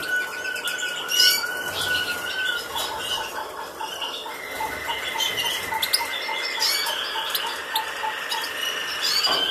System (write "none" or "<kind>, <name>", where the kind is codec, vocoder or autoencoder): none